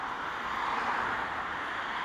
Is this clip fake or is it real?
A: real